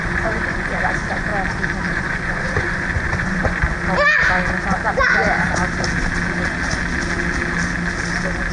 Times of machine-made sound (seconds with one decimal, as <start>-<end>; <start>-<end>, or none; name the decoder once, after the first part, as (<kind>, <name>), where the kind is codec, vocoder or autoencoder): 0.0-1.3 (vocoder, Vocos); 1.9-3.6